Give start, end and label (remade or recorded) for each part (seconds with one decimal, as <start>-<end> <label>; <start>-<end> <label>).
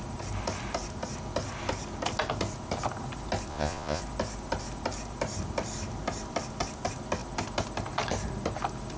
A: 0.0-3.5 recorded; 3.5-4.0 remade; 4.0-9.0 recorded